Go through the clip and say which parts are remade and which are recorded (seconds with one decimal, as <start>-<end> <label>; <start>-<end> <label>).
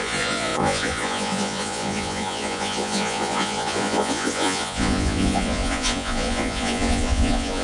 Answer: 0.0-7.6 remade